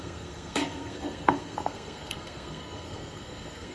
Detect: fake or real fake